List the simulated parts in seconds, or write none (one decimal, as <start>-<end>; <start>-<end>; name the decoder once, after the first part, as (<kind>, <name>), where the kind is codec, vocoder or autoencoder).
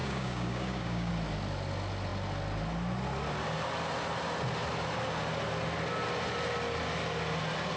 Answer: 0.0-1.1 (codec, DAC)